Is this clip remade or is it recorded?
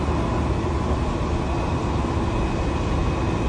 recorded